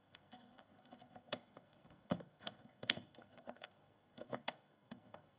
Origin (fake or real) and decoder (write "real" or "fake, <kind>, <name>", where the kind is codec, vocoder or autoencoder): fake, codec, SNAC